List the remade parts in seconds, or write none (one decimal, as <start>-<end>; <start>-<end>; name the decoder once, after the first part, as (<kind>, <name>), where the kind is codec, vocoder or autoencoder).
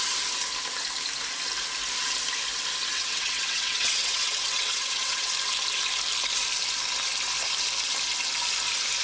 2.9-5.3 (vocoder, WaveNeXt)